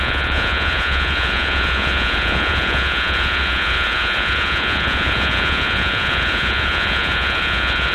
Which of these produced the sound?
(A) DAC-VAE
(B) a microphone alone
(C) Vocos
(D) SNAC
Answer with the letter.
C